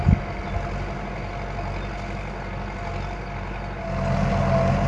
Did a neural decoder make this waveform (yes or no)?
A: no